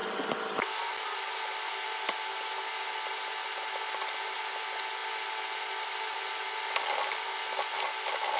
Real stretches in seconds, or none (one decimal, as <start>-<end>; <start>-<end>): 0.0-8.4